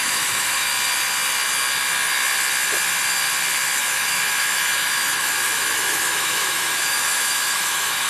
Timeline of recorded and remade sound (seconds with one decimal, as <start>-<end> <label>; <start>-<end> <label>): 0.0-0.7 remade; 0.7-3.8 recorded; 3.8-8.1 remade